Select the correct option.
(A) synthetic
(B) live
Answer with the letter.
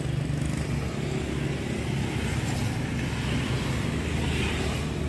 B